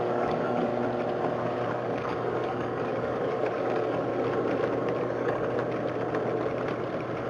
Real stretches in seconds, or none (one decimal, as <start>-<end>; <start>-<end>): 0.7-1.3; 4.1-5.0; 5.6-7.3